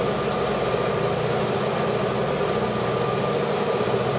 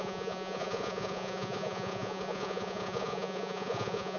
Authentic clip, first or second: first